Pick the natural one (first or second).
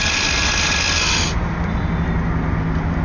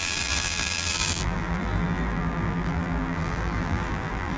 first